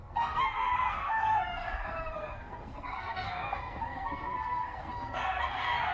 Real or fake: fake